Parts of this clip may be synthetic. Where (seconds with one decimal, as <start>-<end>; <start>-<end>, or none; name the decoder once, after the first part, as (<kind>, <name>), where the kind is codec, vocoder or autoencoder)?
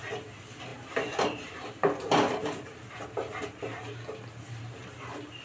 0.7-3.0 (vocoder, BigVGAN v2)